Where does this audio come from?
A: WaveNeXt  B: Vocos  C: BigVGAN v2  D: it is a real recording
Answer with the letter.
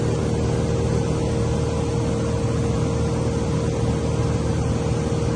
D